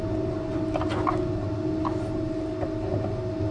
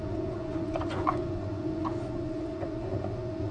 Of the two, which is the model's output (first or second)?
second